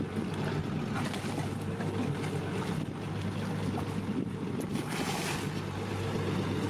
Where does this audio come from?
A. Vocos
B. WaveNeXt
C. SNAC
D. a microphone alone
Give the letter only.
D